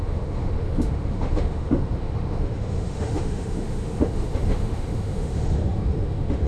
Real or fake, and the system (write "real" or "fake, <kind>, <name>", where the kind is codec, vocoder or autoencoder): fake, autoencoder, DAC-VAE